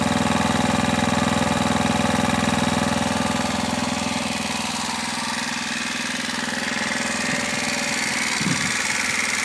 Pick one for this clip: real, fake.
real